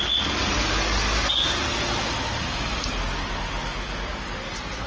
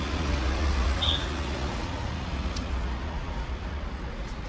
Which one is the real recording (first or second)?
first